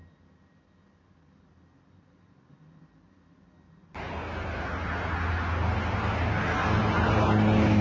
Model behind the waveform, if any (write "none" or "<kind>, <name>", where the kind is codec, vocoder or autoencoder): none